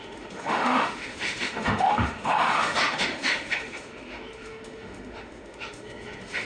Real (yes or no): no